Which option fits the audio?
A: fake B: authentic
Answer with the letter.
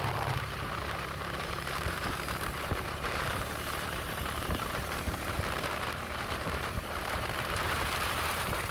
A